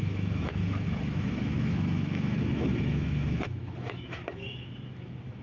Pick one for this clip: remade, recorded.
remade